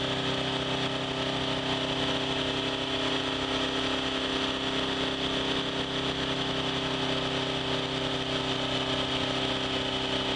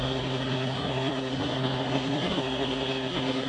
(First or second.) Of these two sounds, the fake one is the second